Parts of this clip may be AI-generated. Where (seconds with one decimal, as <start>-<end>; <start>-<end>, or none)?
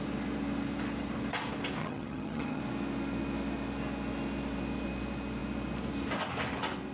1.8-2.6